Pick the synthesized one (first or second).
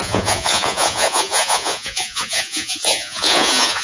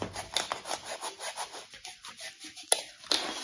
first